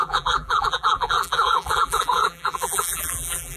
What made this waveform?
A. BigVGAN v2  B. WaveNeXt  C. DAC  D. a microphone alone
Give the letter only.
A